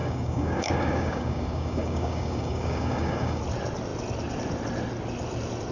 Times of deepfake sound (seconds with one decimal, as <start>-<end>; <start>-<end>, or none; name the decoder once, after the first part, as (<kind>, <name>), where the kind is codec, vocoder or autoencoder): 0.0-3.4 (codec, DAC)